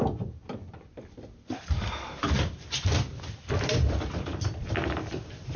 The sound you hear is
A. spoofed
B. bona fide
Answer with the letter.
A